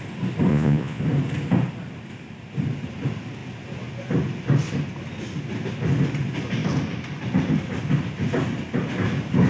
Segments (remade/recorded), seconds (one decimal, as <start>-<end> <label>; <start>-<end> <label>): 0.0-0.5 recorded; 0.5-1.0 remade; 1.0-9.5 recorded